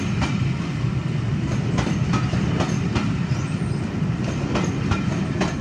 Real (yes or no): yes